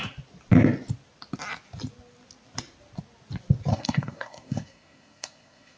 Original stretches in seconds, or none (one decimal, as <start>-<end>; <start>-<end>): 0.0-3.7